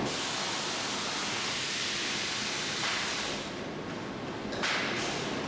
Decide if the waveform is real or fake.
real